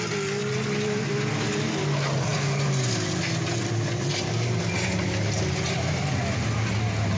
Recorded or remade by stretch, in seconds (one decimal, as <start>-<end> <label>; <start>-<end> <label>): 0.0-7.2 recorded